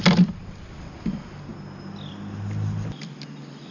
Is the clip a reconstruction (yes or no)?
no